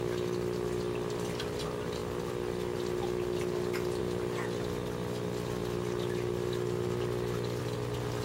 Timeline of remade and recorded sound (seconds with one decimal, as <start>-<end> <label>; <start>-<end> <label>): 0.0-8.2 recorded